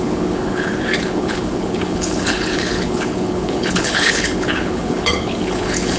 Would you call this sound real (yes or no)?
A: no